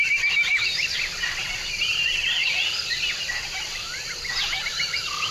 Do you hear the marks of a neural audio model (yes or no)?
no